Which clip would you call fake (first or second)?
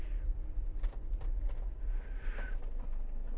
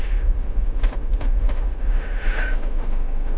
second